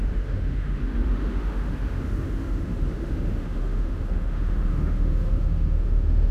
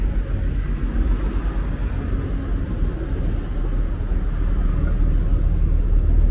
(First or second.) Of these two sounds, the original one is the second